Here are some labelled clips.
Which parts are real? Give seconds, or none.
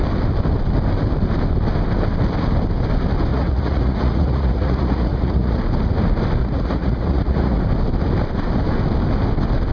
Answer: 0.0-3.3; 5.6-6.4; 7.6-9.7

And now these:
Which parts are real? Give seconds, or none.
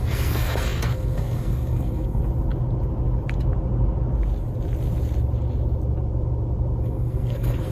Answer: 2.2-6.8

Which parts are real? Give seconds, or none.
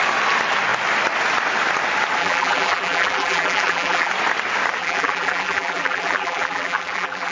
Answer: 0.0-2.2; 4.1-4.8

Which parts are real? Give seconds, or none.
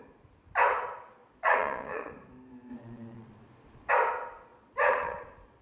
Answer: 0.0-1.2; 2.1-2.7; 3.9-4.5